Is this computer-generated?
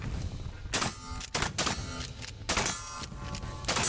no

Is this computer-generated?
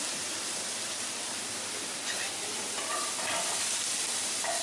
yes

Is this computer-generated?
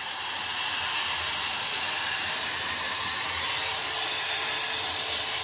yes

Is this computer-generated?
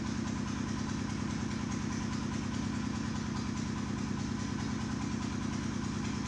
no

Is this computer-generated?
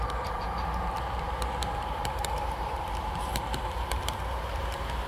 yes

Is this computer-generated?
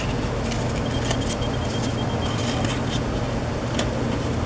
no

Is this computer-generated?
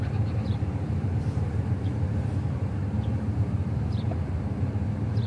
yes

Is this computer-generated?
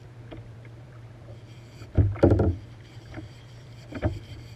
yes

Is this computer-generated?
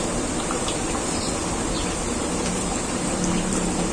yes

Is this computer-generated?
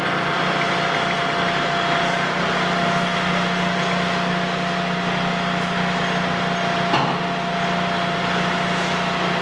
no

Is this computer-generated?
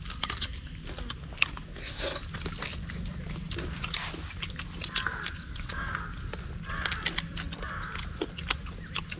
no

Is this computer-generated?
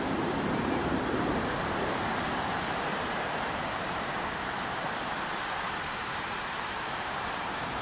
yes